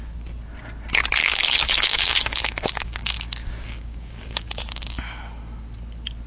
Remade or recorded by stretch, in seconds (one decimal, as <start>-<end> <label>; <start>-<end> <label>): 0.0-1.2 recorded; 1.2-5.0 remade; 5.0-6.3 recorded